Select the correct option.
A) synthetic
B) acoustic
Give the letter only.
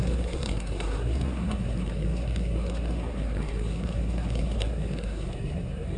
A